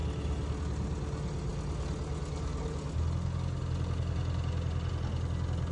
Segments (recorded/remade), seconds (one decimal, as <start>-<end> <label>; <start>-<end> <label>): 0.0-5.7 recorded